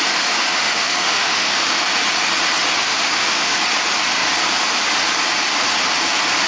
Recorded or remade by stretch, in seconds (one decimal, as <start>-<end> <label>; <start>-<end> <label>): 0.0-0.5 recorded; 0.5-1.8 remade; 1.8-2.8 recorded; 2.8-3.6 remade; 3.6-6.5 recorded